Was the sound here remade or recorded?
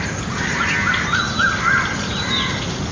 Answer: recorded